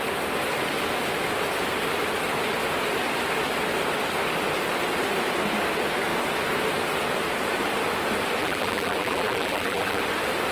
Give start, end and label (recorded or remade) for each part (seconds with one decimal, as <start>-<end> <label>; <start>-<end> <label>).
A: 0.0-8.4 recorded; 8.4-10.0 remade; 10.0-10.5 recorded